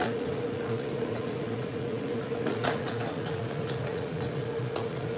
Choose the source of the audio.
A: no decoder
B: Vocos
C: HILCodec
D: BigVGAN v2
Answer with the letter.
B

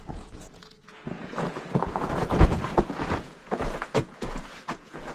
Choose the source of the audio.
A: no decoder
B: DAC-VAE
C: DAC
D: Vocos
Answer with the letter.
D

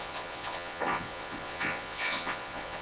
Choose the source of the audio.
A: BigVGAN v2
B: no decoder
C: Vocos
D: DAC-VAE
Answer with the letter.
C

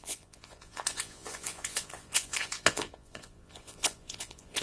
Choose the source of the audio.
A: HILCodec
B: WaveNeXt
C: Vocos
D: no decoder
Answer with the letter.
C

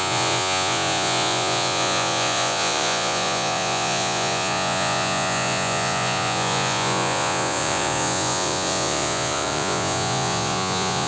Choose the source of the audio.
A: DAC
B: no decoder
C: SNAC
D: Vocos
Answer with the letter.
D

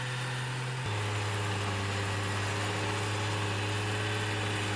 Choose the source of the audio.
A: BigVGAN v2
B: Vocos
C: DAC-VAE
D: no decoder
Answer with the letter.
D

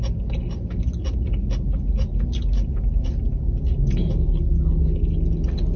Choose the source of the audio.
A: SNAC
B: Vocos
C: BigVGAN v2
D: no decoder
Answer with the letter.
D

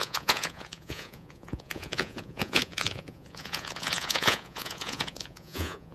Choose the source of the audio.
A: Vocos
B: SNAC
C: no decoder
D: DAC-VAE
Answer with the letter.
A